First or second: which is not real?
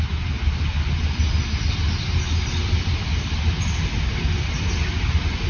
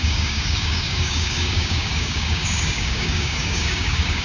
second